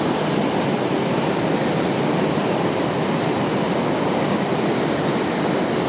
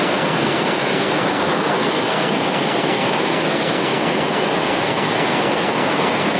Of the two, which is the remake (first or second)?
second